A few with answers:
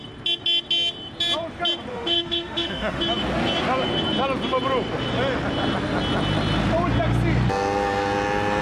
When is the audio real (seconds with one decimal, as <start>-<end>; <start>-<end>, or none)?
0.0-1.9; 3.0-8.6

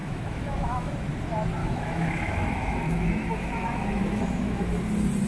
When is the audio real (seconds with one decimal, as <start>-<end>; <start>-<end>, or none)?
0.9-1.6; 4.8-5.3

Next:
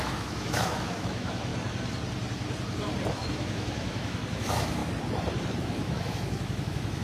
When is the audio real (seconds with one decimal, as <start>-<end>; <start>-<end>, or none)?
1.5-3.1; 4.8-5.6